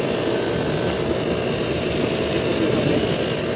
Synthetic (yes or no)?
no